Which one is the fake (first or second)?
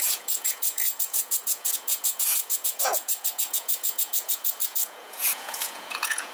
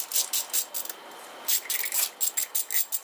first